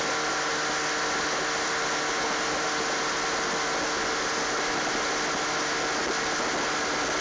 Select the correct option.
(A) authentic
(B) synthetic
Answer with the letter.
A